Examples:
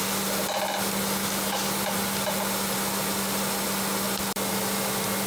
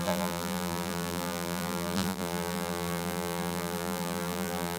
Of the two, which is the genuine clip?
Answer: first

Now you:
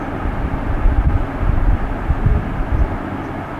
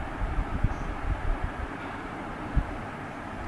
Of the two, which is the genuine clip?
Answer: first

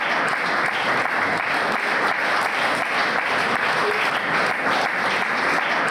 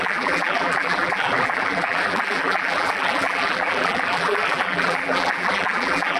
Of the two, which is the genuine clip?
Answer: first